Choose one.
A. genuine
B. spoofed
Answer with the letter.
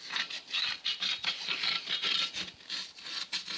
A